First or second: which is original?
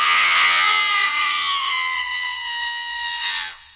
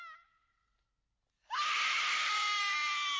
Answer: second